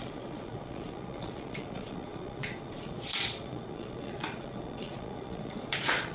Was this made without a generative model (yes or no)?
no